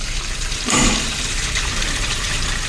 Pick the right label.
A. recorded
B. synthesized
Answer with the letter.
B